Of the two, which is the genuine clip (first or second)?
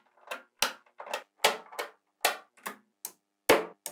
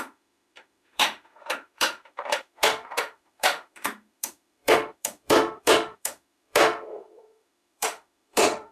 first